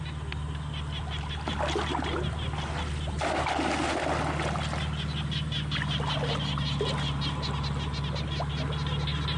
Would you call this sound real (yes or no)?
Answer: yes